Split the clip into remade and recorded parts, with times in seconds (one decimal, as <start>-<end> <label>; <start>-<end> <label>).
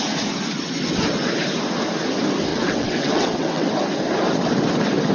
0.0-2.5 recorded; 2.5-3.7 remade; 3.7-5.1 recorded